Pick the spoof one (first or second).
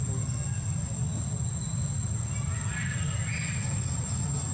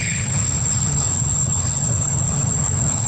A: second